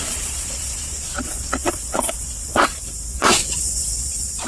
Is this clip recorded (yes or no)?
no